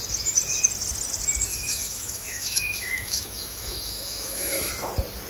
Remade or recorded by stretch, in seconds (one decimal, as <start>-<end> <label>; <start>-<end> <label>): 0.0-1.5 recorded; 1.5-4.7 remade; 4.7-5.3 recorded